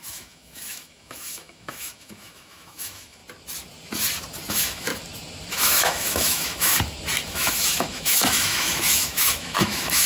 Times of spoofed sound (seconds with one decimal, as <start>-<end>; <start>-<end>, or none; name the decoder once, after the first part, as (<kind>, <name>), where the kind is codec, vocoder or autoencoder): 0.0-3.2 (autoencoder, DAC-VAE); 4.5-4.9; 5.5-6.7; 7.3-10.1